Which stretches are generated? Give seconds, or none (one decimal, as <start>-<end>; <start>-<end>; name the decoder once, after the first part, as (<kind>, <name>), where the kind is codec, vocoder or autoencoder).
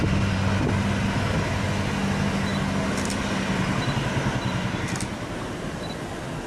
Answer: none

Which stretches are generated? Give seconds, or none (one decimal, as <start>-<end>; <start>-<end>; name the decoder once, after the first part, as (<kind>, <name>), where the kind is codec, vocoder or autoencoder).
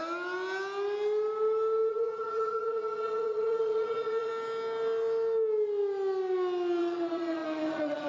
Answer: 1.9-4.3 (vocoder, Vocos); 6.8-8.1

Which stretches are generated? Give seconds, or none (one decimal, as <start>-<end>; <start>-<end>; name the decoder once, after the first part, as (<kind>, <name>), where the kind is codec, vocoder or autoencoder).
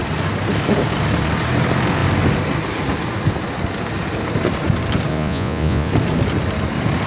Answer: 5.1-5.9 (vocoder, Vocos)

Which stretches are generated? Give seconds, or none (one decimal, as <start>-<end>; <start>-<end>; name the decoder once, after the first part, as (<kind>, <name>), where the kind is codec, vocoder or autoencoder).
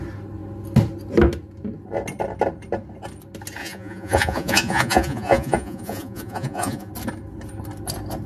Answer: 3.6-6.9 (vocoder, Vocos)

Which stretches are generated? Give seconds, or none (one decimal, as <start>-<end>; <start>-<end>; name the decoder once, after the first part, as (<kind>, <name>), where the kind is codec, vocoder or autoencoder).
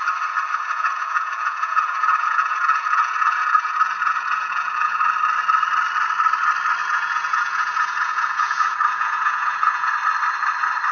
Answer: 0.6-5.0 (vocoder, Vocos); 6.8-9.9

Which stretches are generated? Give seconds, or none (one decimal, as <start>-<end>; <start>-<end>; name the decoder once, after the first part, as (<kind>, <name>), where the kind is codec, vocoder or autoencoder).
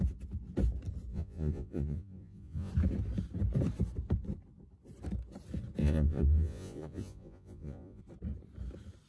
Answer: 1.1-2.7 (vocoder, Vocos); 5.8-8.0